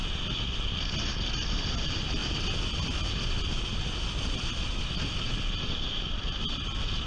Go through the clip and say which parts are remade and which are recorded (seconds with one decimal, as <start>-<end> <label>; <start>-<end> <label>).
0.0-7.1 recorded